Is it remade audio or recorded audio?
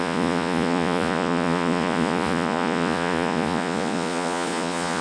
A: remade